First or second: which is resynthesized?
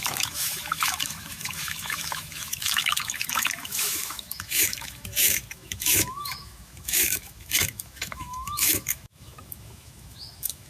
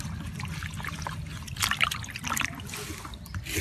first